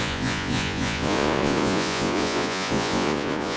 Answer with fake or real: fake